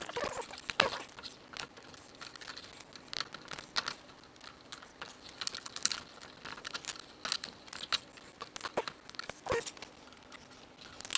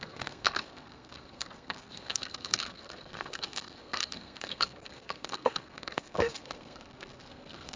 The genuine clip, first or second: first